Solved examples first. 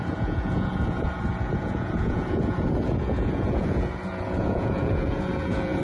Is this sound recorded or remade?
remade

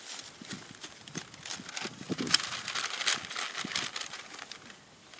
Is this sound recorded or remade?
recorded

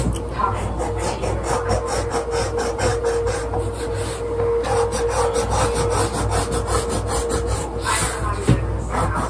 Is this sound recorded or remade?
recorded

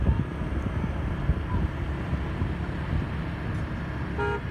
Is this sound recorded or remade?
recorded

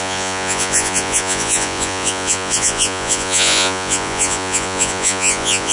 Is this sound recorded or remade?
remade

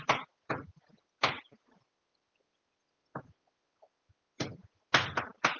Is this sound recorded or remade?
recorded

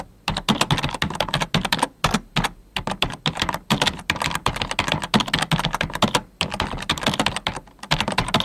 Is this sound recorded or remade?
recorded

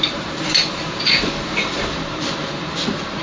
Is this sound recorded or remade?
remade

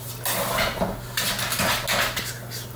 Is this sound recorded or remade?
recorded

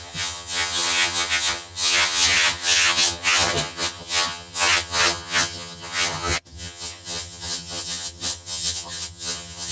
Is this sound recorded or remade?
remade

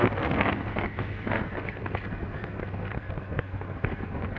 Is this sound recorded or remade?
remade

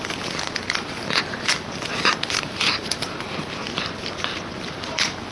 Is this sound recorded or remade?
recorded